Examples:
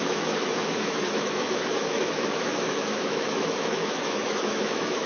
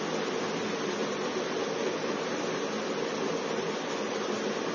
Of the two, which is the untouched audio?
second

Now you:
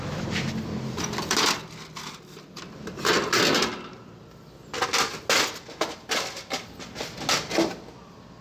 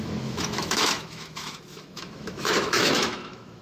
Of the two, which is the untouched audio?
first